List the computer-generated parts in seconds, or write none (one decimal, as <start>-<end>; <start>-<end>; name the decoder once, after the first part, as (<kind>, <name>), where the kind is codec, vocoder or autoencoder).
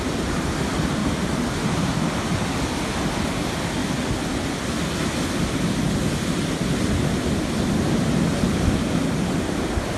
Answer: none